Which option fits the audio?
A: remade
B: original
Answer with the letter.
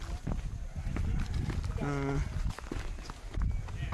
B